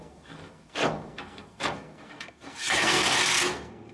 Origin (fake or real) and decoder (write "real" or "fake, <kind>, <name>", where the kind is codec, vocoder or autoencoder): fake, codec, SNAC